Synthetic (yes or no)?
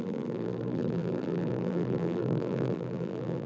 yes